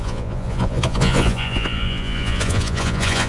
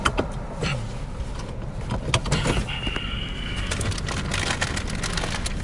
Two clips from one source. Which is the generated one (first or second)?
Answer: first